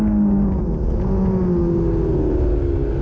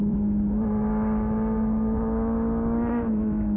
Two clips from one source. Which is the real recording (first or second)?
first